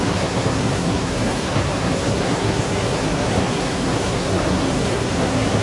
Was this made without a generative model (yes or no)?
no